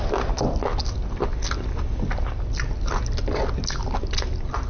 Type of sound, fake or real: real